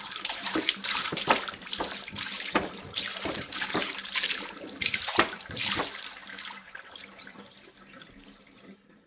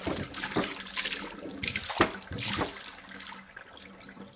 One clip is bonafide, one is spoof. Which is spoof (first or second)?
first